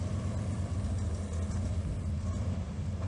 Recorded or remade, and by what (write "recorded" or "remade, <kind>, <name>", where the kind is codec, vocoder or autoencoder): recorded